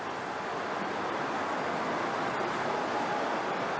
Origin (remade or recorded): recorded